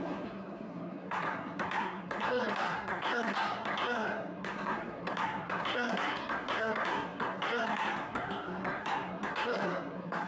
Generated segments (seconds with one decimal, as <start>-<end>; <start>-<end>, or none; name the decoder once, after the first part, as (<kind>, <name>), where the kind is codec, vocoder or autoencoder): 0.0-10.3 (codec, SNAC)